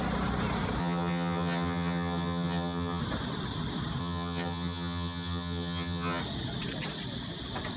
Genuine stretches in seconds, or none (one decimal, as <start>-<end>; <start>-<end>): 0.0-0.8; 3.0-4.0; 6.2-7.8